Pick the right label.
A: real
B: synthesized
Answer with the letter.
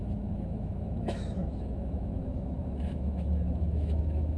B